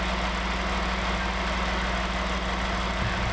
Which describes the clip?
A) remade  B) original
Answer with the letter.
B